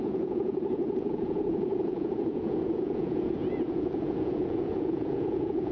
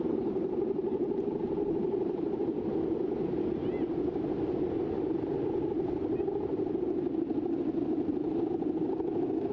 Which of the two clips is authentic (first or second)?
second